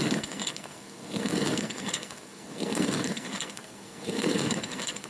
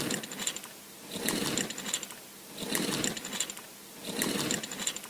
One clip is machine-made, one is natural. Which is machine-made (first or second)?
first